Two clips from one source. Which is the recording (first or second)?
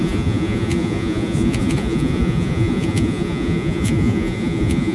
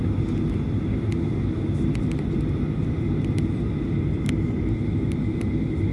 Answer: second